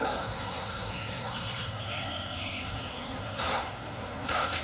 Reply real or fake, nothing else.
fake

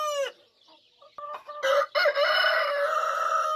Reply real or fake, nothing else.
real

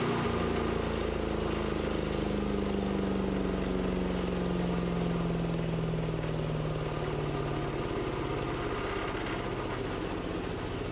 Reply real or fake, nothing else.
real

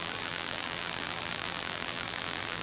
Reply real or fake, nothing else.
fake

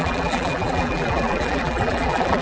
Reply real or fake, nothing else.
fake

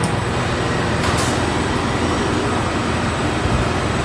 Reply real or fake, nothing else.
real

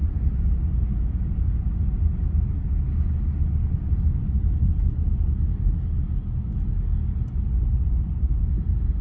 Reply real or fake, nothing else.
real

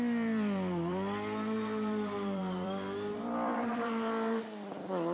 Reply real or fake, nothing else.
fake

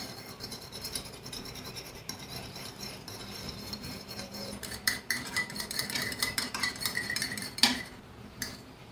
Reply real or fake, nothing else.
fake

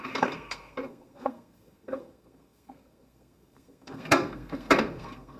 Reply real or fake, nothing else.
fake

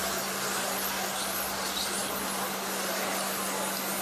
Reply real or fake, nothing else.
real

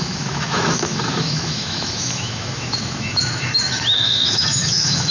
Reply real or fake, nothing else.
fake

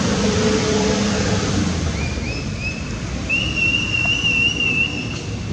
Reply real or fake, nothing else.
fake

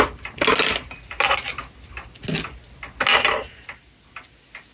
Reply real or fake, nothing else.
real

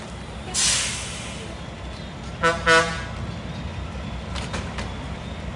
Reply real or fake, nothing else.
real